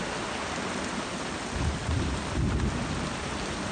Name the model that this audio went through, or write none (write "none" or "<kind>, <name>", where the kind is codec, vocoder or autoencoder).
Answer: none